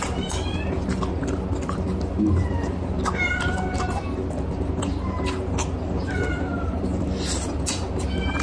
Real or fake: real